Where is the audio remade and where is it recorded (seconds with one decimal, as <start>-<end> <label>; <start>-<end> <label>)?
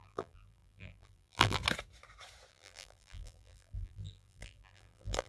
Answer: 0.0-1.6 remade; 1.6-2.5 recorded; 2.5-5.3 remade